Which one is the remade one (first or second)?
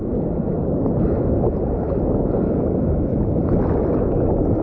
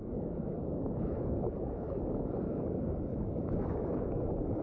second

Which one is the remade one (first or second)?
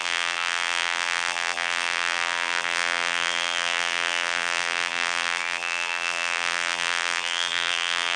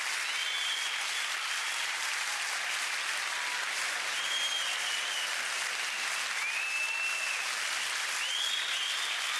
first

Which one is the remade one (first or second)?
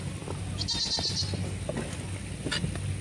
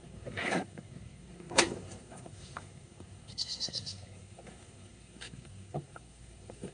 second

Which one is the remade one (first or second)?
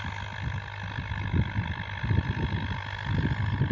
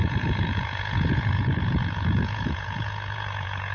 second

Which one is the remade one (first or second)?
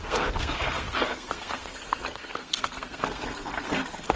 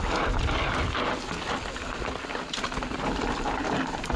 first